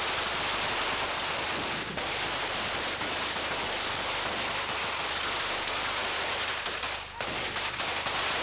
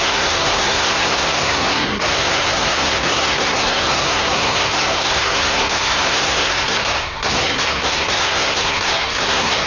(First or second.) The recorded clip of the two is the first